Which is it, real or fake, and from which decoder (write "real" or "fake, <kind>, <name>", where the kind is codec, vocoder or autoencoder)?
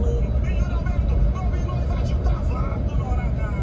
real